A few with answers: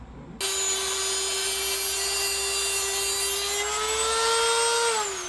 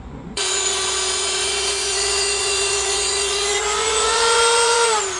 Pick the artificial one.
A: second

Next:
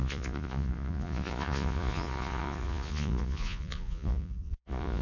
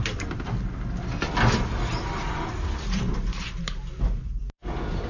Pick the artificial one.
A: first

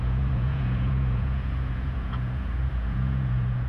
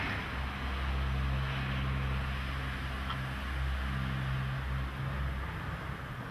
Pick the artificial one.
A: first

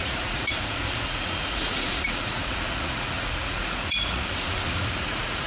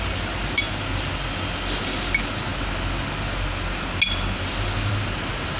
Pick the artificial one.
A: first